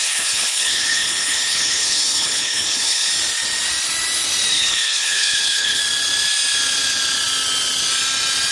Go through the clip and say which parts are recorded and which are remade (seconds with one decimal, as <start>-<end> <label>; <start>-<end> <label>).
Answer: 0.0-3.1 remade; 3.1-4.5 recorded; 4.5-5.8 remade; 5.8-8.5 recorded